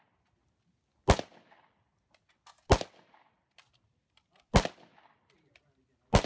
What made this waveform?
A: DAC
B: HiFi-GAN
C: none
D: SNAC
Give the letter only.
C